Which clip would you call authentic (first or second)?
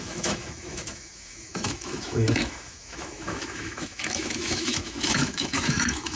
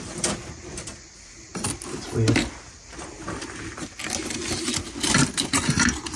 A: second